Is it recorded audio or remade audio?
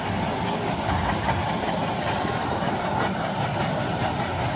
recorded